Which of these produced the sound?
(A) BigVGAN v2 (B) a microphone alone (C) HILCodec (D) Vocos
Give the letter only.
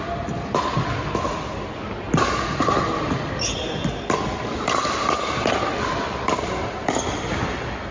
B